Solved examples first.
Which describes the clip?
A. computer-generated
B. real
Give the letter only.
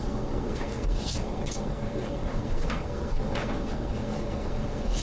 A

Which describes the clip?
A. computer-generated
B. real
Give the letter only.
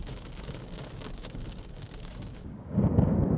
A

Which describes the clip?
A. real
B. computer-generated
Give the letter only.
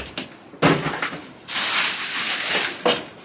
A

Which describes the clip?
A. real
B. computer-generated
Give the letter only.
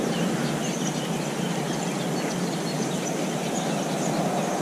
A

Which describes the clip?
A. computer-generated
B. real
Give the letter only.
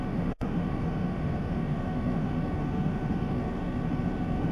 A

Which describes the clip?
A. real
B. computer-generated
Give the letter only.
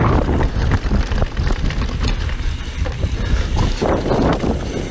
A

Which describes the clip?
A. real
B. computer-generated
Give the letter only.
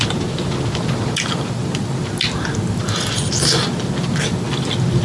A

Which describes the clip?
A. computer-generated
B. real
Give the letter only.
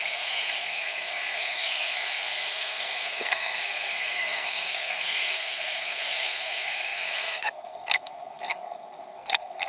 A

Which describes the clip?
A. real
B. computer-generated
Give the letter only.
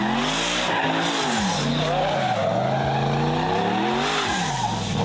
A